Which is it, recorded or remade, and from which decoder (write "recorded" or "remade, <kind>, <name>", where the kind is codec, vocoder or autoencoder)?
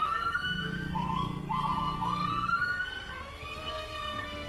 remade, codec, SNAC